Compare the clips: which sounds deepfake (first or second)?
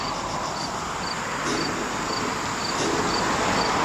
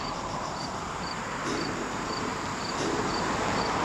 second